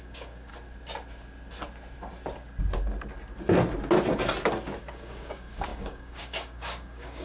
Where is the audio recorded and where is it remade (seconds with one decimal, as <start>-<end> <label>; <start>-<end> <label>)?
0.0-0.5 remade; 0.5-4.8 recorded; 4.8-7.2 remade